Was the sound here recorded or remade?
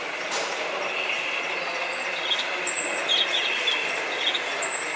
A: recorded